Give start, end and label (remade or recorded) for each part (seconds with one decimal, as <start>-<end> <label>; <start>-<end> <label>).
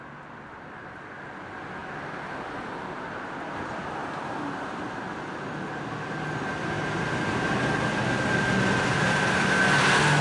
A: 0.0-10.2 recorded